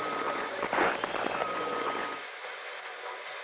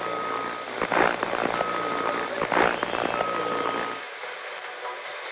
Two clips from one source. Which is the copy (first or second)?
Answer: first